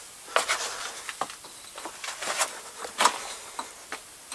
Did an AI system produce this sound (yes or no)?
no